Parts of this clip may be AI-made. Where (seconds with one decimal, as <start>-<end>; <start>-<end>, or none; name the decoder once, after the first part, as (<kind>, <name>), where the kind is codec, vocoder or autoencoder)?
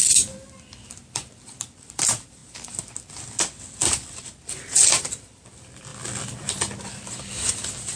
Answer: 0.0-2.4 (vocoder, BigVGAN v2); 5.0-5.9; 7.5-8.0